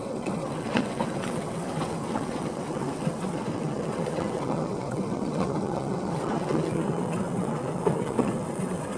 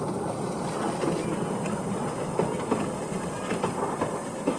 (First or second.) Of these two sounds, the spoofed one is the first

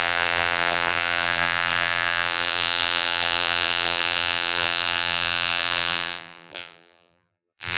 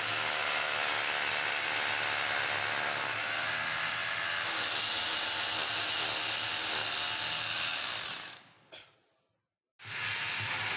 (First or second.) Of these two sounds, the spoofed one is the first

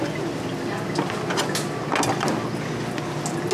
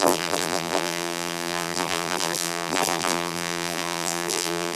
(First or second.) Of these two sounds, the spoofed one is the second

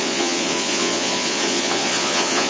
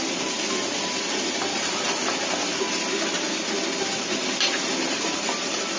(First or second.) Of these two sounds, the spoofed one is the first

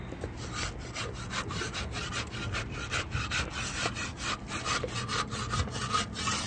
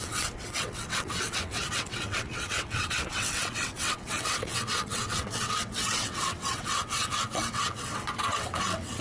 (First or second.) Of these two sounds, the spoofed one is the second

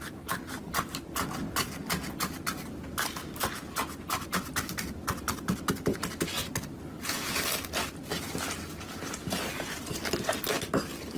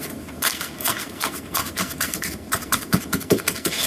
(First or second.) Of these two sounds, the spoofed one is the second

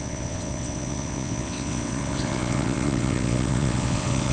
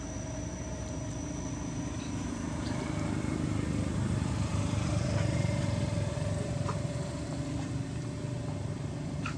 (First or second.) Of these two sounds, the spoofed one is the first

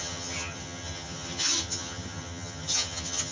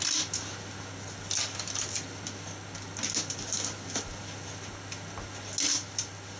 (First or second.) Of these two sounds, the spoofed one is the first